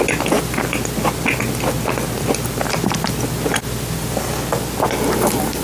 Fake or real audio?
real